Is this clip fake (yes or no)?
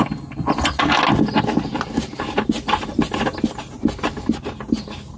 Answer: no